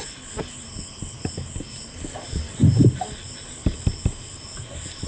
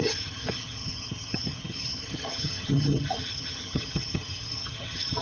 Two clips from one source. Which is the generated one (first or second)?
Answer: second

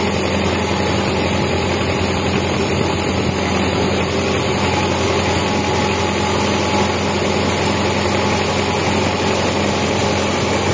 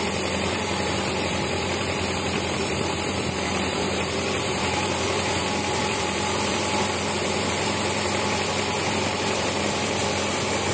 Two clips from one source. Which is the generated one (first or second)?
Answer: second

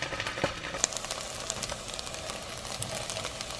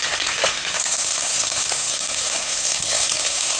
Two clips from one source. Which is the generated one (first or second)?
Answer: second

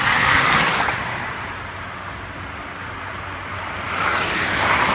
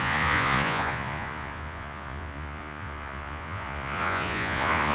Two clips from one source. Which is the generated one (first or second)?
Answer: second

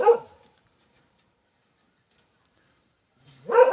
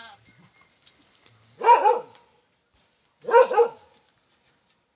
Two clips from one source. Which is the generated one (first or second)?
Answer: first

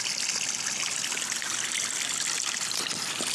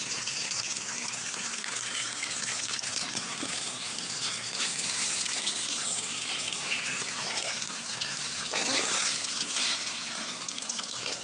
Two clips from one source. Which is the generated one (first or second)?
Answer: second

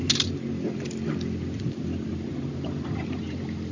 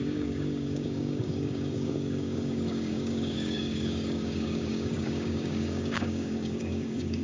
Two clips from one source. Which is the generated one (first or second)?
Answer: second